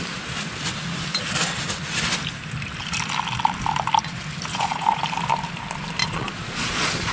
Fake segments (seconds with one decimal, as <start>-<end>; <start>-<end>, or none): 4.5-5.0; 6.0-7.1